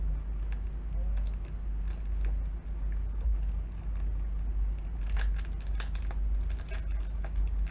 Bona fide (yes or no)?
yes